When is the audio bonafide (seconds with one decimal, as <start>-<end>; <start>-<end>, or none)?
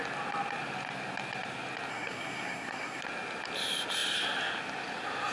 0.0-1.9; 3.0-5.3